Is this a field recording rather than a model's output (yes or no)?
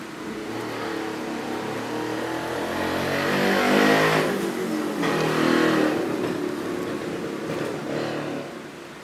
yes